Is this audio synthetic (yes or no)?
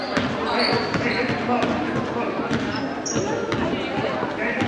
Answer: no